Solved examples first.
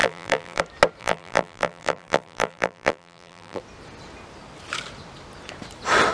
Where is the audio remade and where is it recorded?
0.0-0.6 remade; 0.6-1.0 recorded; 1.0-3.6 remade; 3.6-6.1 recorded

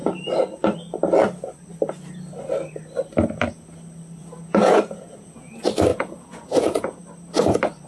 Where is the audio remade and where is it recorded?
0.0-4.2 recorded; 4.2-5.5 remade; 5.5-5.9 recorded; 5.9-7.0 remade; 7.0-7.9 recorded

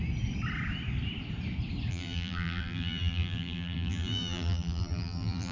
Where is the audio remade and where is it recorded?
0.0-1.9 recorded; 1.9-5.5 remade